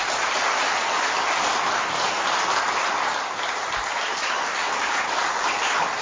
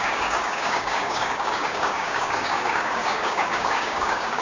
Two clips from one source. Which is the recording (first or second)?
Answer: first